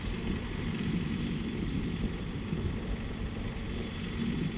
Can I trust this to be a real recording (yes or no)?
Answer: no